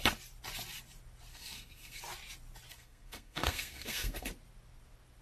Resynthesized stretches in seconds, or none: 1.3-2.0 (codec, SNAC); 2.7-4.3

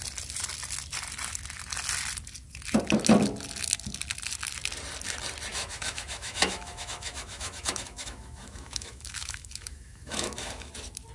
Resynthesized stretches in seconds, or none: 5.5-10.7 (autoencoder, DAC-VAE)

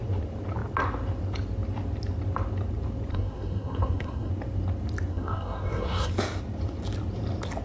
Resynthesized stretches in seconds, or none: 3.1-4.3 (codec, SNAC); 5.1-6.1

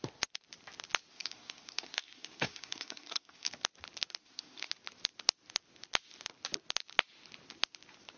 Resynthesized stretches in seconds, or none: 1.1-3.5 (codec, SNAC); 4.2-4.7

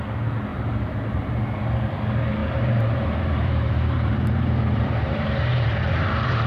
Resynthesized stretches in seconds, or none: 0.5-1.3 (vocoder, BigVGAN v2); 2.4-6.5

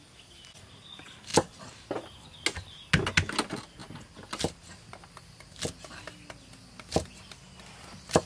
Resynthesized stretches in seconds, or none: none

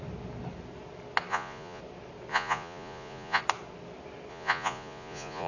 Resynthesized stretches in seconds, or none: 1.3-1.8 (vocoder, Vocos); 2.3-3.4; 4.3-5.5

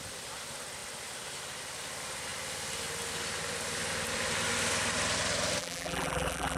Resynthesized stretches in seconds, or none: 5.6-6.6 (vocoder, BigVGAN v2)